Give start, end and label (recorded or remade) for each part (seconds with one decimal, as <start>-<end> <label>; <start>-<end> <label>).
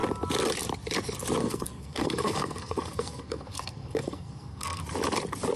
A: 0.0-1.4 recorded; 1.4-4.8 remade; 4.8-5.6 recorded